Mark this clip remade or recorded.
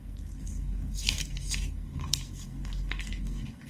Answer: remade